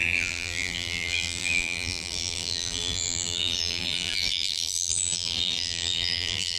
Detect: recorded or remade remade